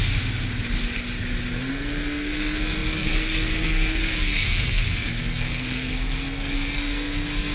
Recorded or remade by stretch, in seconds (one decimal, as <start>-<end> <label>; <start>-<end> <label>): 0.0-1.7 recorded; 1.7-7.5 remade